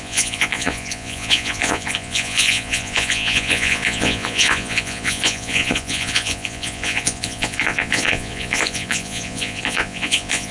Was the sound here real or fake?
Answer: fake